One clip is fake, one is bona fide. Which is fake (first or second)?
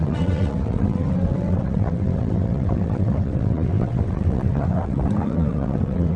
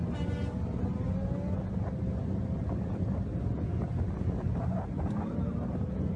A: first